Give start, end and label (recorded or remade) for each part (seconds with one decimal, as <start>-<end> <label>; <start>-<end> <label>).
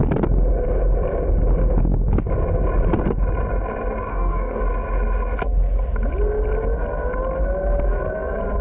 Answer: 0.0-4.1 recorded; 4.1-4.6 remade; 4.6-8.6 recorded